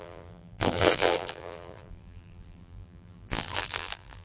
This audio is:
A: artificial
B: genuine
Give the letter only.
A